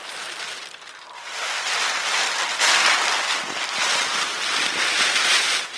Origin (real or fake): real